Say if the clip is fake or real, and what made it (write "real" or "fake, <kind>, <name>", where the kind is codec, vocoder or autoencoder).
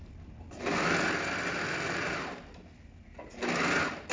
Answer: real